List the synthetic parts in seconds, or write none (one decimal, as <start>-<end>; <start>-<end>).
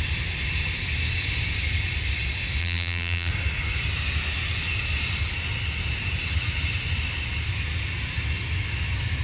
2.6-3.3